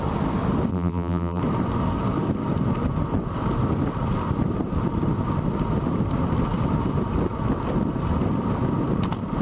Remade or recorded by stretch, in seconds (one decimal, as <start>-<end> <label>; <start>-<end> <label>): 0.0-0.7 recorded; 0.7-1.4 remade; 1.4-9.4 recorded